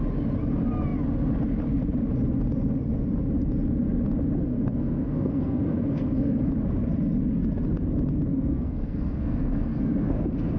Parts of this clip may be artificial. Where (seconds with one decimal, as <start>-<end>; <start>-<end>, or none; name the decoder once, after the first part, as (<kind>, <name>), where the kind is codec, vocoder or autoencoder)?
4.4-6.5 (codec, SNAC); 8.3-10.6